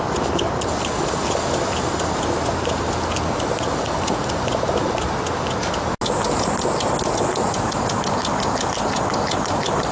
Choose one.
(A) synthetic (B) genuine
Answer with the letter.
B